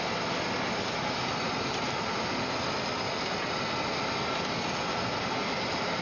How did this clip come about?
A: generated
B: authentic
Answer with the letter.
B